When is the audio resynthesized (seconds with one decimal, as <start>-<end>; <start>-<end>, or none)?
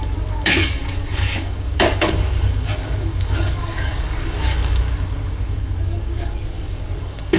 0.0-7.4